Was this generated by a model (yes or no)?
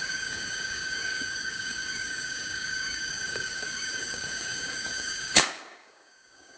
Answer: yes